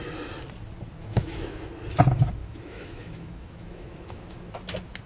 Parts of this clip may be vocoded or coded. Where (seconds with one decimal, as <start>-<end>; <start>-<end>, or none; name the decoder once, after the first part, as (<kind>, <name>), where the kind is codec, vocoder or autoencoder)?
1.0-1.7 (autoencoder, DAC-VAE); 2.4-4.5